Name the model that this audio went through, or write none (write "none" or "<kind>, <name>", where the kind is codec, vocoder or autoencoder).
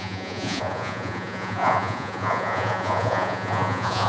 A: vocoder, Vocos